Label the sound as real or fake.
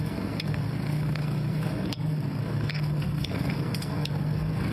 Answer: fake